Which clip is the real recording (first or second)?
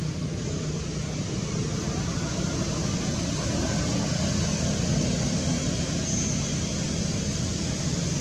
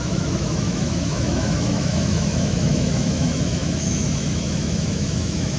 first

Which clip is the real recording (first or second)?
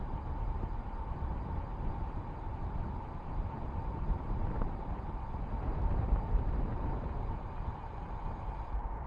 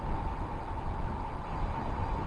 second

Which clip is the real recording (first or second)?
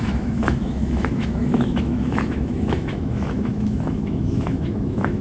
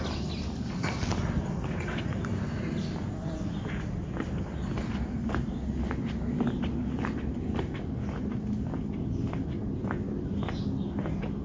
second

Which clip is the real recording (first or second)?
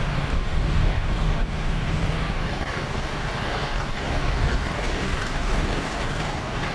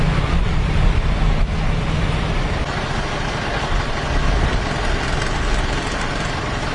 second